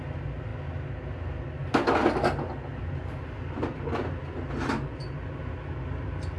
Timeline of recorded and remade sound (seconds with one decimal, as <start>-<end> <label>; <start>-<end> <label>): 0.0-6.4 recorded